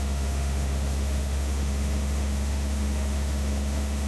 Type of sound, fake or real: fake